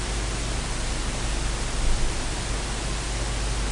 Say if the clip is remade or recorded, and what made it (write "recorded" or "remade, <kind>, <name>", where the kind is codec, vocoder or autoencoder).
recorded